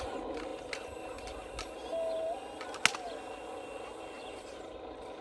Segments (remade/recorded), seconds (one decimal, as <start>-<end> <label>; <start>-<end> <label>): 0.0-5.2 recorded